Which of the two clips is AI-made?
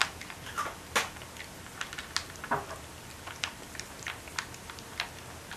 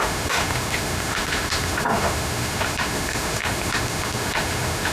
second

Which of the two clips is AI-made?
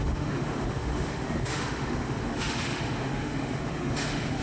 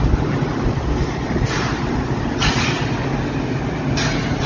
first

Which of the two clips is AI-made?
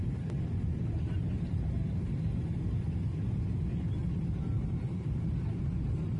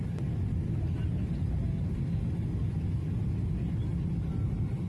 first